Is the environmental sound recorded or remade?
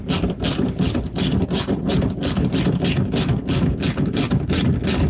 recorded